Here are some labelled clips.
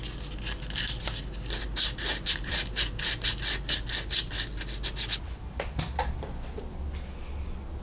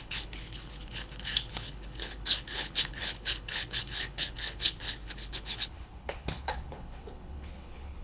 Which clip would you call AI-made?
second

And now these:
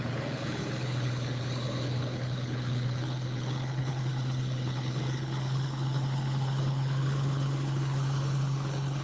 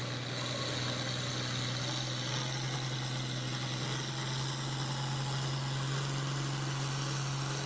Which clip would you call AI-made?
first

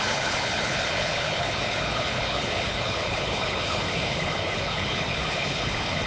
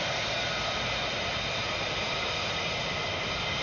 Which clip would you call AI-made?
first